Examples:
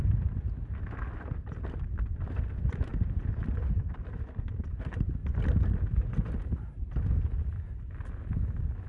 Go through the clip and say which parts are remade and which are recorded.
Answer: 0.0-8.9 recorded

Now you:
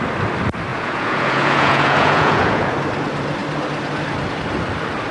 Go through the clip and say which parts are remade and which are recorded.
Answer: 0.0-0.7 recorded; 0.7-2.7 remade; 2.7-5.1 recorded

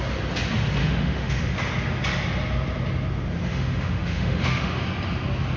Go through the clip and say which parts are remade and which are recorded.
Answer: 0.0-0.8 recorded; 0.8-1.6 remade; 1.6-3.5 recorded; 3.5-4.8 remade; 4.8-5.6 recorded

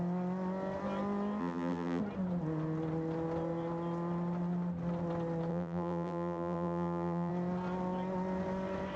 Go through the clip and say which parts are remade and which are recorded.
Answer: 0.0-1.4 recorded; 1.4-2.0 remade; 2.0-5.5 recorded; 5.5-7.3 remade; 7.3-9.0 recorded

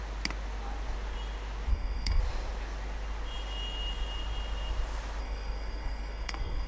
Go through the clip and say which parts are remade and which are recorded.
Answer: 0.0-1.7 recorded; 1.7-2.2 remade; 2.2-5.2 recorded; 5.2-6.7 remade